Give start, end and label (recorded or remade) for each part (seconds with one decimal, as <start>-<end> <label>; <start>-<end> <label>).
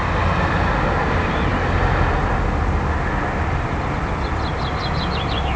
0.0-5.6 recorded